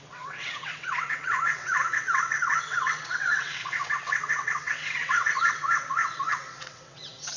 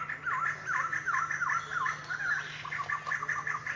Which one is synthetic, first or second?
first